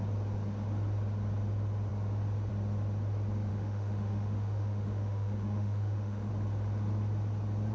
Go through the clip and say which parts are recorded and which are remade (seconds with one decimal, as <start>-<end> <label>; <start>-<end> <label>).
0.0-3.5 recorded; 3.5-6.3 remade; 6.3-7.7 recorded